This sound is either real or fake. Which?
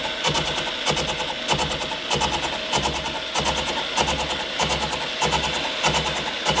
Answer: real